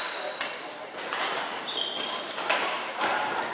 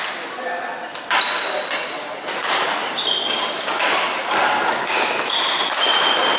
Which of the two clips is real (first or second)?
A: second